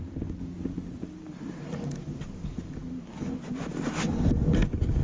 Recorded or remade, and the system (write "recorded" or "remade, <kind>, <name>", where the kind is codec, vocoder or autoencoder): recorded